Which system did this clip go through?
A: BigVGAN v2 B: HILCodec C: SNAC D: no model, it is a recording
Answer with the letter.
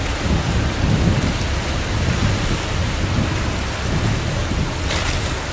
D